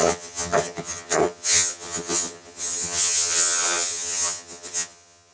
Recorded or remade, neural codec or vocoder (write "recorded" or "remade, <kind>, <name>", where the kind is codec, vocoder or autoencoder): remade, vocoder, HiFi-GAN